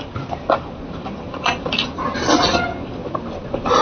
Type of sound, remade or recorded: recorded